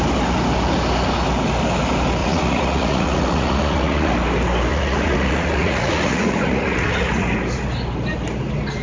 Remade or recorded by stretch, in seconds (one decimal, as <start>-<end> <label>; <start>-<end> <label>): 0.0-2.2 recorded; 2.2-4.1 remade; 4.1-4.7 recorded; 4.7-7.3 remade; 7.3-8.8 recorded